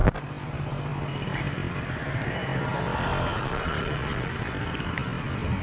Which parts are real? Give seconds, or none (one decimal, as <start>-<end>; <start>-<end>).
0.0-3.4; 4.3-5.6